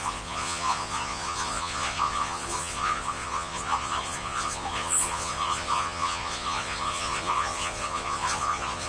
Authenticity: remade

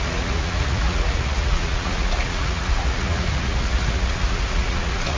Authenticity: remade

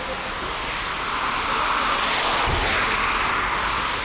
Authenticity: recorded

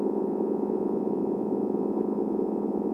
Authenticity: remade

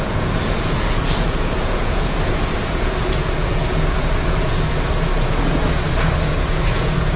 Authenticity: remade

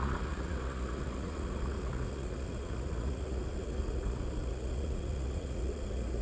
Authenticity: remade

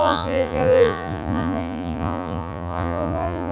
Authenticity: remade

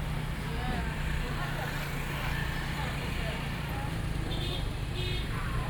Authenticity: recorded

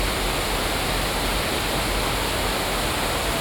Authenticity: recorded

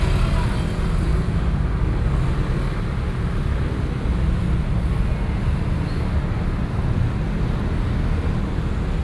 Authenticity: recorded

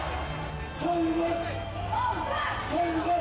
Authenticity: recorded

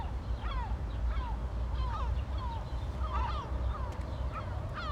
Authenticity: recorded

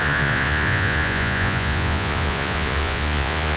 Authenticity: remade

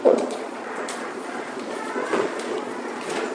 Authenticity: remade